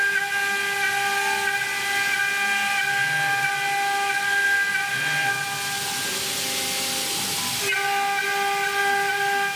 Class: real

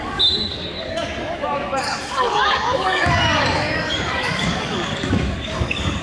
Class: fake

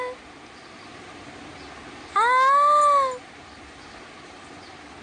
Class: real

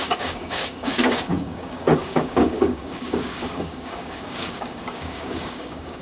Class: fake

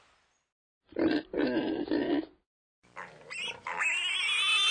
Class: real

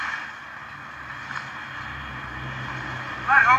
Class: real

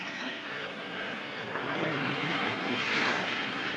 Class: fake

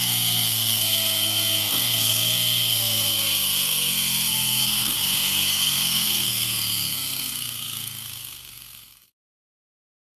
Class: fake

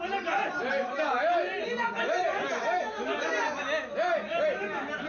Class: real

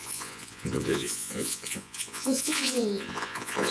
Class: fake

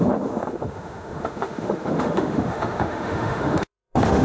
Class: fake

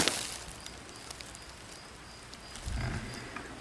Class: real